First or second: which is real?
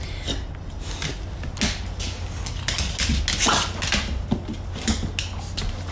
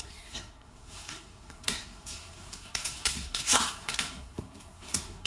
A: first